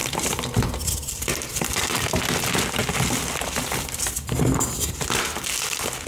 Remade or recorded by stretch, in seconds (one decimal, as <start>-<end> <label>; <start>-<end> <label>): 0.0-1.8 remade; 1.8-2.8 recorded; 2.8-4.6 remade; 4.6-6.1 recorded